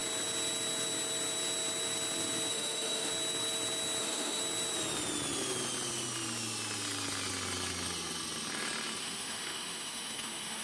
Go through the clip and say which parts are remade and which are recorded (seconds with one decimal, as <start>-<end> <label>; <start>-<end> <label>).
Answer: 0.0-2.5 recorded; 2.5-3.1 remade; 3.1-4.0 recorded; 4.0-4.4 remade; 4.4-9.0 recorded; 9.0-10.6 remade